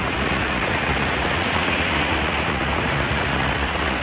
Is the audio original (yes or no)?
no